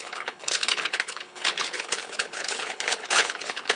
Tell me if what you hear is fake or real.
fake